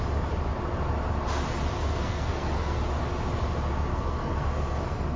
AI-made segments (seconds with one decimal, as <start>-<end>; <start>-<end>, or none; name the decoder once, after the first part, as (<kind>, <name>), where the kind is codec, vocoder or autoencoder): 1.8-2.8 (codec, SNAC); 3.9-5.2